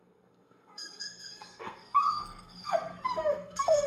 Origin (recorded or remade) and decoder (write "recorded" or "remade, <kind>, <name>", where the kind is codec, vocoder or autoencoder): remade, codec, SNAC